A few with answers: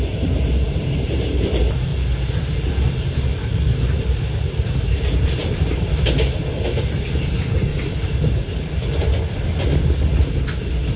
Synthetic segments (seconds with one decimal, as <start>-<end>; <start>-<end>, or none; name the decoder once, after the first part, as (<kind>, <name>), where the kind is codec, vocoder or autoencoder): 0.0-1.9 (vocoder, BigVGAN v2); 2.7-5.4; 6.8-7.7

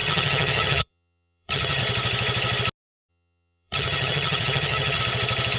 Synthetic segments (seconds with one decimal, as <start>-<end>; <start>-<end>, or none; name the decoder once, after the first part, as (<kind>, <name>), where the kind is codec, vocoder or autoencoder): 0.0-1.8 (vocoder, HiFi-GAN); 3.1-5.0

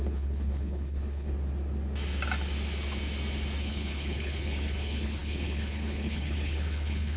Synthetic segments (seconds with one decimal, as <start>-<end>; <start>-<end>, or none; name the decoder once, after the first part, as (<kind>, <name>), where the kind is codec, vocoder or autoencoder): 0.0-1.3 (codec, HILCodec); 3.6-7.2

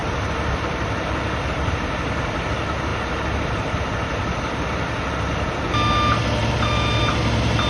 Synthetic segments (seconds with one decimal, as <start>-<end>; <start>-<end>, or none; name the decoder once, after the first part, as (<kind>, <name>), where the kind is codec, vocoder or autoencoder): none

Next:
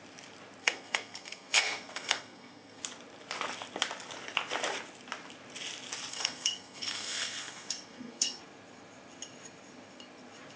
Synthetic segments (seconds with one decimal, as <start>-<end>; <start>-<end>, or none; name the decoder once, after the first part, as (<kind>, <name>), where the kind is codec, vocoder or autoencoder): 0.6-2.8 (codec, SNAC); 6.1-8.4

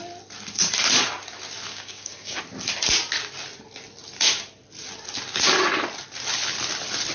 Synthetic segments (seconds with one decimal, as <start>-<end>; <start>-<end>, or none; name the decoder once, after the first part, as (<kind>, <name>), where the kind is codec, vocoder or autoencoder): 1.7-2.4 (codec, DAC)

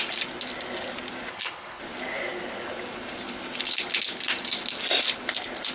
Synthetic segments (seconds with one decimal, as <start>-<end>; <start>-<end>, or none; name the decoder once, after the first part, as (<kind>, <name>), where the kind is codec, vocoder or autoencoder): 1.3-1.8 (codec, HILCodec)

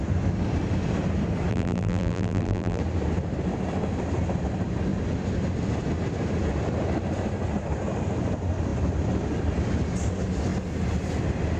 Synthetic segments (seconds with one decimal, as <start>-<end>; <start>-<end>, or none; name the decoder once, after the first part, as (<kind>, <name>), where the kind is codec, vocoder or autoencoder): 1.5-2.8 (vocoder, BigVGAN v2)